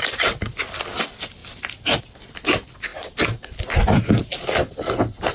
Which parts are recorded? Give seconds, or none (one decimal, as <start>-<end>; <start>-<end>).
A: 0.0-1.4; 2.0-2.9; 4.0-5.3